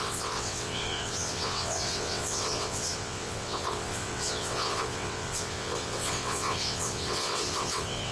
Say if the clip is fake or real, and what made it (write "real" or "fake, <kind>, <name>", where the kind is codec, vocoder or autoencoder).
fake, vocoder, WaveNeXt